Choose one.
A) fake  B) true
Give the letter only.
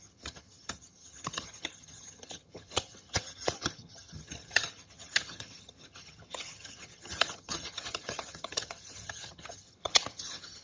A